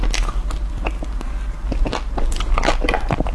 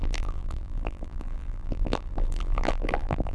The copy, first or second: second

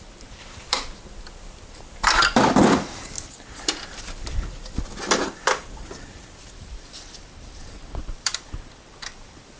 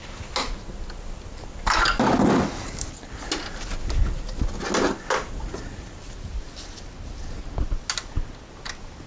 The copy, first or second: first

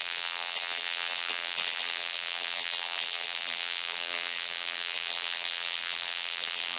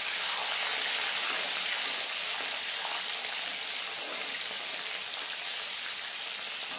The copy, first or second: first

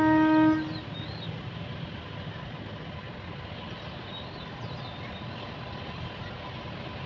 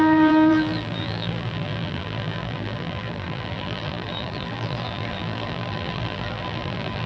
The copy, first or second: second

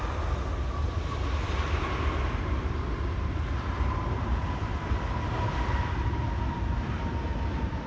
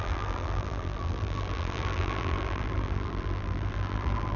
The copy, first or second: second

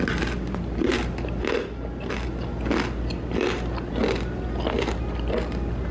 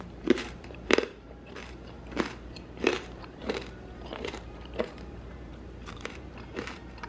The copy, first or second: second